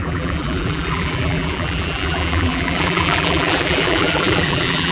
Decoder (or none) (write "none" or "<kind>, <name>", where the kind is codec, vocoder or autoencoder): vocoder, BigVGAN v2